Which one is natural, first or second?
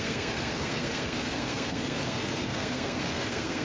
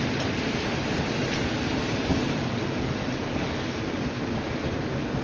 second